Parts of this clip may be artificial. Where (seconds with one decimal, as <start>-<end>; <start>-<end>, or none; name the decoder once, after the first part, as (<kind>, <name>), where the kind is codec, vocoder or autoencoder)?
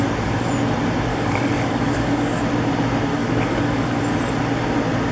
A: 1.1-2.4 (codec, DAC); 3.1-4.0